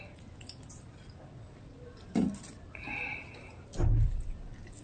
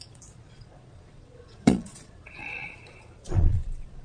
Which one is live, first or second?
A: first